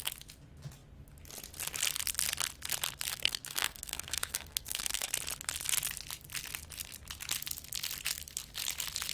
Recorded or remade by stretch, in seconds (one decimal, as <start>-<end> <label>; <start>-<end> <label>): 0.0-3.1 recorded; 3.1-5.1 remade; 5.1-9.1 recorded